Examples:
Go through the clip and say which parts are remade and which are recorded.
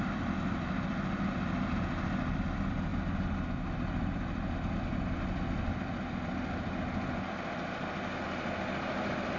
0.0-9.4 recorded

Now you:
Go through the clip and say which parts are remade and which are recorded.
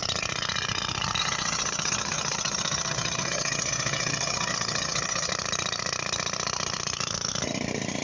0.0-1.2 recorded; 1.2-5.3 remade; 5.3-8.0 recorded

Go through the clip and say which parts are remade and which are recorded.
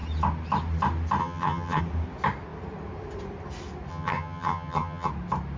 0.0-1.2 recorded; 1.2-1.8 remade; 1.8-3.9 recorded; 3.9-5.1 remade; 5.1-5.6 recorded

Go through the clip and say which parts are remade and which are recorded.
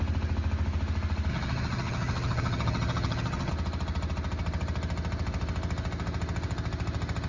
0.0-1.3 recorded; 1.3-3.5 remade; 3.5-7.3 recorded